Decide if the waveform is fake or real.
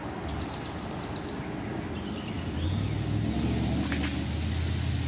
real